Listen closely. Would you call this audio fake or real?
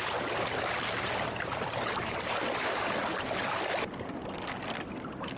real